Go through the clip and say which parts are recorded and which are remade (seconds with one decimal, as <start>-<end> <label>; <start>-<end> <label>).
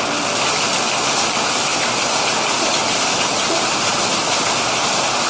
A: 0.0-5.3 recorded